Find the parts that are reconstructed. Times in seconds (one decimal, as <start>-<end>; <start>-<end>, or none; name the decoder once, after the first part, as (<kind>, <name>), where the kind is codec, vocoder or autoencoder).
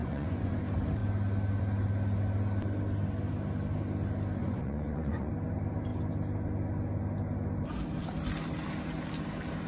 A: 0.0-0.5 (vocoder, Vocos); 4.4-5.3